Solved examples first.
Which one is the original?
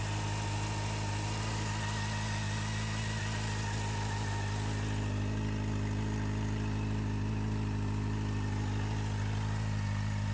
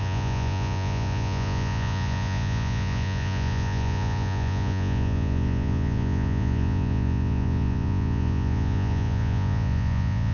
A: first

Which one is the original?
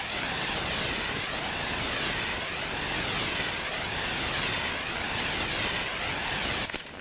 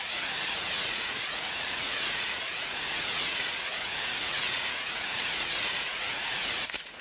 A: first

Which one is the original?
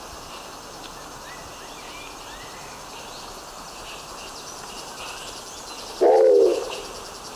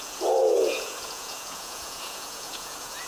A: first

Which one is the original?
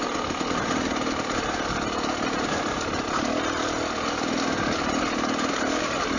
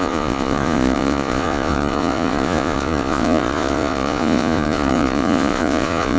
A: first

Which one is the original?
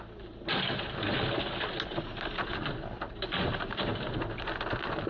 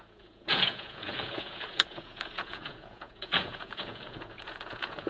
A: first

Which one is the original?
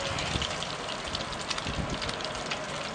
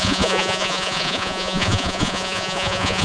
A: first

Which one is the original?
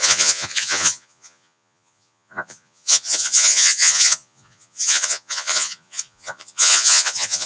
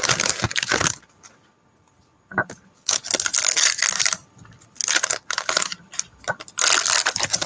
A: second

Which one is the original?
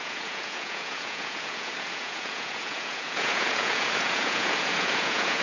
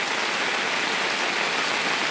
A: second